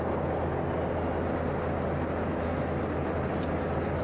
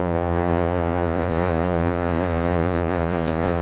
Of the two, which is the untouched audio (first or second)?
first